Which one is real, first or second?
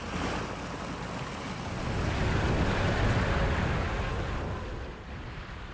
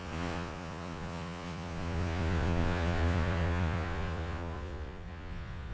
first